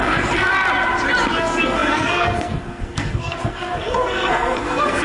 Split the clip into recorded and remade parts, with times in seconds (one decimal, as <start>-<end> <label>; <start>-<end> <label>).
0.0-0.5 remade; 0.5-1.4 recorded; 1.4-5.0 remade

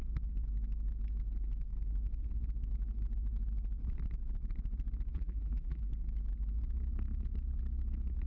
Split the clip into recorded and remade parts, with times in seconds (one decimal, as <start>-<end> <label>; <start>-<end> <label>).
0.0-5.1 recorded; 5.1-5.9 remade; 5.9-8.3 recorded

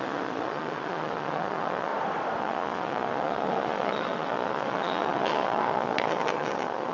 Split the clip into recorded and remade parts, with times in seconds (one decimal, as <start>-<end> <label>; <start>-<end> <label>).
0.0-1.9 remade; 1.9-2.4 recorded; 2.4-6.9 remade